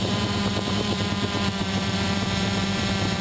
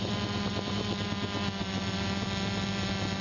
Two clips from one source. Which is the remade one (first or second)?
first